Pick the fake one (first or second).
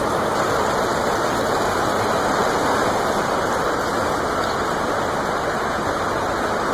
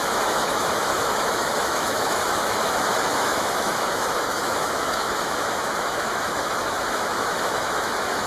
second